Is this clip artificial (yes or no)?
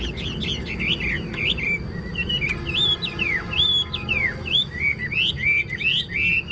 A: no